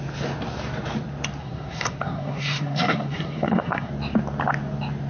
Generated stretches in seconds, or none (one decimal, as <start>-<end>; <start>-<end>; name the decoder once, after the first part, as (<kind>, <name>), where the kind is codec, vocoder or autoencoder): 1.4-3.9 (codec, SNAC)